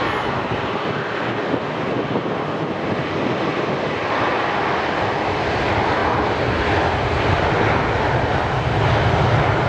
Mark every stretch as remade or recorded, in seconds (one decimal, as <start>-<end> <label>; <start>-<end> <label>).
0.0-9.7 recorded